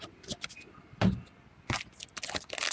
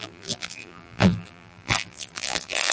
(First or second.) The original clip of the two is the first